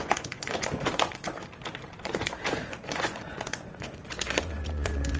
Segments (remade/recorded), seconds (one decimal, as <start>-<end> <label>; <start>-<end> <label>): 0.0-1.3 remade; 1.3-2.0 recorded; 2.0-5.2 remade